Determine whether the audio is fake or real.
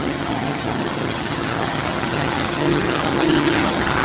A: fake